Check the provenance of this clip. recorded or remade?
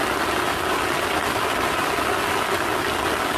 recorded